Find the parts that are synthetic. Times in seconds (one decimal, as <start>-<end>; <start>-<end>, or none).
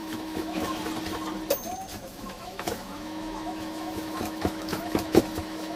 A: 0.0-0.8; 1.9-5.8